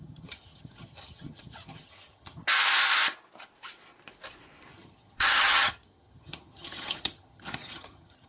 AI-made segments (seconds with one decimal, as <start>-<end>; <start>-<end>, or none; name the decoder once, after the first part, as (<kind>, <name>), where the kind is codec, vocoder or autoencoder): 0.0-2.4 (vocoder, HiFi-GAN); 4.7-8.3